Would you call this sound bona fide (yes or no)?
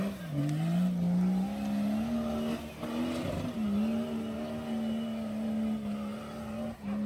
yes